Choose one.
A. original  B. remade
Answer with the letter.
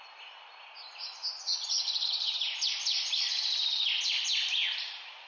A